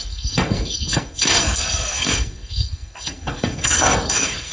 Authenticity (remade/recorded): remade